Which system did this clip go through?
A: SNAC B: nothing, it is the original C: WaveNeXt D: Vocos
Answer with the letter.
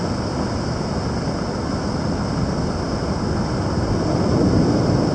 B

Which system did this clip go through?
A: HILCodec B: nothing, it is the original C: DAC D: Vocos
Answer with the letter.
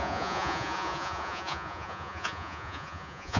D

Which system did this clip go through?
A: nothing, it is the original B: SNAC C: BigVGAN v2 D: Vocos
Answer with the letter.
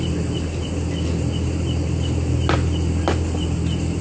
A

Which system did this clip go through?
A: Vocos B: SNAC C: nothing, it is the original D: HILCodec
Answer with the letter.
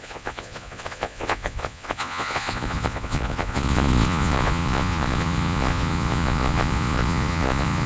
A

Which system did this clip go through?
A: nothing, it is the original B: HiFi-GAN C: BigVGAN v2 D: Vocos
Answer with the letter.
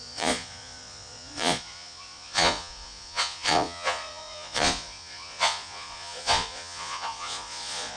D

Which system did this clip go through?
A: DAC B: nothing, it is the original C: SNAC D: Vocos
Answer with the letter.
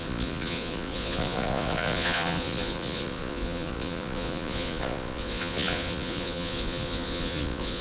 D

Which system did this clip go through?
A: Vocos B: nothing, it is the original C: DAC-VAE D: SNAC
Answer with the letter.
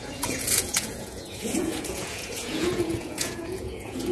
A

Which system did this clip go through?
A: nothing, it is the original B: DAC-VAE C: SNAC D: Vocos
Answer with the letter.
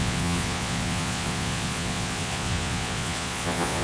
D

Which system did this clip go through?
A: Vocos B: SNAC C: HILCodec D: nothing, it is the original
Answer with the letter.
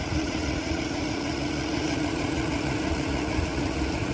A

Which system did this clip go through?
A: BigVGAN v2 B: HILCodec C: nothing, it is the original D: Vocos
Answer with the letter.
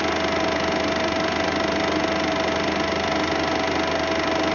C